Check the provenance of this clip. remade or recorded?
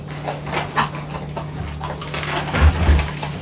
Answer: recorded